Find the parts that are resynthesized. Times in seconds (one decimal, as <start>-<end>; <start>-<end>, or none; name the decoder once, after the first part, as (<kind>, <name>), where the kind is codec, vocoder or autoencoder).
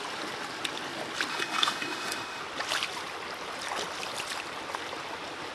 1.3-2.4 (autoencoder, DAC-VAE)